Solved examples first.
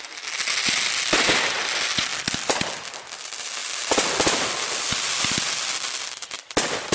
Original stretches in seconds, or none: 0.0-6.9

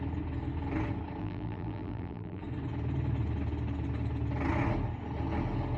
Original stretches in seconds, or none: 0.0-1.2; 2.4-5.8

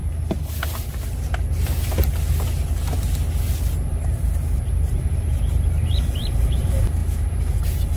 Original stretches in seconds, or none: 0.0-4.0